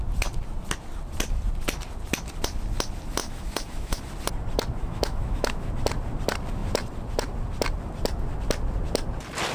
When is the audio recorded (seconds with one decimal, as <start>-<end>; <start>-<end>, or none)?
0.0-3.2; 4.0-4.8; 5.7-9.5